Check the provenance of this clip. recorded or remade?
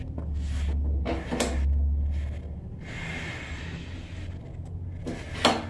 recorded